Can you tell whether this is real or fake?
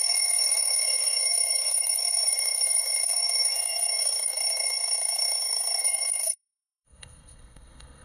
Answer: fake